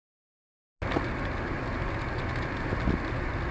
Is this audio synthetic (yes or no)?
no